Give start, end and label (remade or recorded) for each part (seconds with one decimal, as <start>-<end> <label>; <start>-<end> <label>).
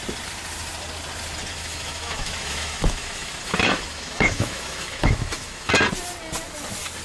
0.0-1.5 recorded; 1.5-5.7 remade; 5.7-7.0 recorded